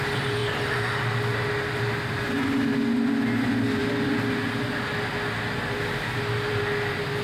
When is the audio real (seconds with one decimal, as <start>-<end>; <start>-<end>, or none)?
0.0-7.2